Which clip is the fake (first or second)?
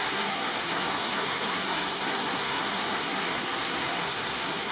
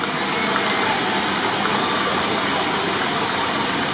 first